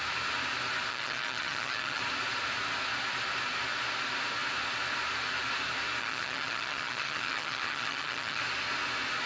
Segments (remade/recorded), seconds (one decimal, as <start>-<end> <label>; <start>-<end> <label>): 0.0-0.9 recorded; 0.9-2.0 remade; 2.0-6.0 recorded; 6.0-8.4 remade; 8.4-9.3 recorded